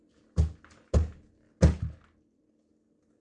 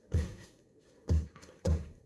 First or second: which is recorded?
first